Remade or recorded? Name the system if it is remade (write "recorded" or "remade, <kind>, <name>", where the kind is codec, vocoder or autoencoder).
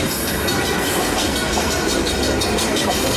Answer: remade, codec, SNAC